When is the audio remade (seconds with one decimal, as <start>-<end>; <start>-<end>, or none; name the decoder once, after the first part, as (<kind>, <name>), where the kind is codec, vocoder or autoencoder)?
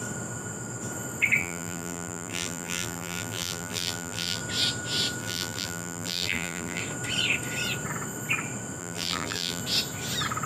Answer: 1.4-4.4 (vocoder, BigVGAN v2); 5.2-6.8; 8.8-9.6